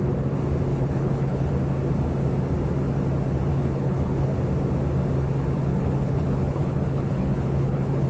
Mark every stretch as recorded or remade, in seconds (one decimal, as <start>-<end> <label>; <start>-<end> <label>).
0.0-0.7 recorded; 0.7-1.5 remade; 1.5-3.5 recorded; 3.5-4.4 remade; 4.4-5.7 recorded; 5.7-8.1 remade